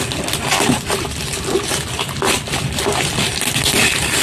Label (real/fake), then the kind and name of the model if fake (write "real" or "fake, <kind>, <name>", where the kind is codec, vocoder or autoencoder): real